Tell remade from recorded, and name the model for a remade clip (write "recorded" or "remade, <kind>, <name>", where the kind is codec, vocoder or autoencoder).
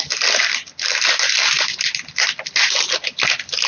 recorded